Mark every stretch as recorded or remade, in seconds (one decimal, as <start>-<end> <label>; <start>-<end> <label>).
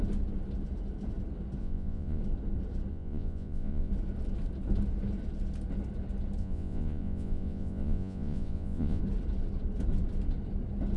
0.0-1.6 recorded; 1.6-2.2 remade; 2.2-2.9 recorded; 2.9-3.9 remade; 3.9-6.4 recorded; 6.4-9.0 remade; 9.0-11.0 recorded